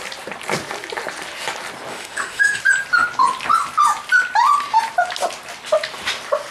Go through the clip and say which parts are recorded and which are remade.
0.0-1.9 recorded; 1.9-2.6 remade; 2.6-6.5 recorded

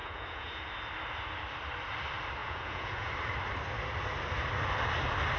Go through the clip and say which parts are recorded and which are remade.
0.0-0.7 remade; 0.7-2.4 recorded; 2.4-3.1 remade; 3.1-5.4 recorded

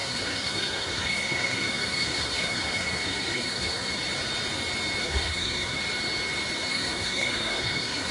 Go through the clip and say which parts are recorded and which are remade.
0.0-3.9 remade; 3.9-5.0 recorded; 5.0-5.8 remade; 5.8-6.7 recorded; 6.7-8.1 remade

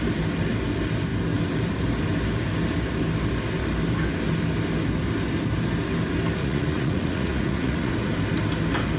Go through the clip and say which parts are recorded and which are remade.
0.0-6.4 recorded; 6.4-7.9 remade; 7.9-9.0 recorded

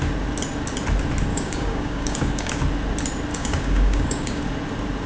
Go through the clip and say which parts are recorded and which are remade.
0.0-1.3 recorded; 1.3-2.6 remade; 2.6-3.3 recorded; 3.3-4.4 remade; 4.4-5.1 recorded

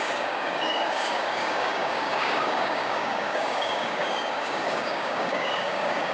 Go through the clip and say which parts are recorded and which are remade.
0.0-6.1 remade

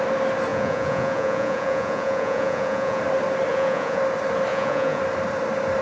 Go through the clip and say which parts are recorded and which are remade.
0.0-0.5 recorded; 0.5-3.0 remade; 3.0-3.5 recorded; 3.5-4.0 remade; 4.0-4.5 recorded; 4.5-5.0 remade; 5.0-5.8 recorded

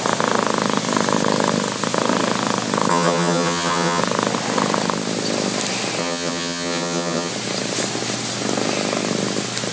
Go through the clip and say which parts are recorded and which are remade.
0.0-2.9 recorded; 2.9-4.0 remade; 4.0-6.0 recorded; 6.0-7.3 remade; 7.3-9.7 recorded